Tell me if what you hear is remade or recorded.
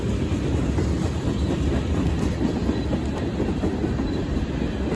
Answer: recorded